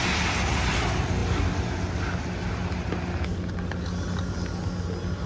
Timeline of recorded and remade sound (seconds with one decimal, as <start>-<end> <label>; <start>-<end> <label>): 0.0-5.3 recorded